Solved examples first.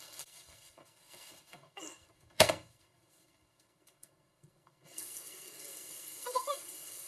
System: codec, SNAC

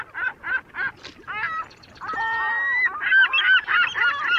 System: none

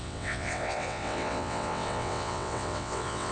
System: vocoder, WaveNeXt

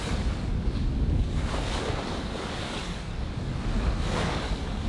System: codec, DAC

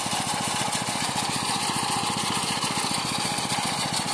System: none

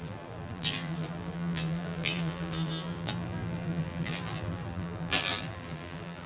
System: vocoder, BigVGAN v2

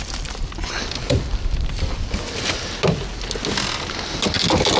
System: none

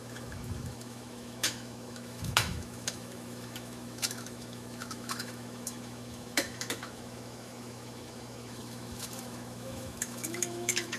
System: autoencoder, DAC-VAE